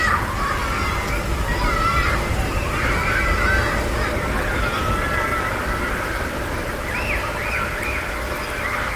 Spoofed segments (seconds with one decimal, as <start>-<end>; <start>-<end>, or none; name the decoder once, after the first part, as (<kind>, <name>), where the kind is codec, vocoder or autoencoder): 1.5-2.9 (vocoder, BigVGAN v2); 5.3-6.7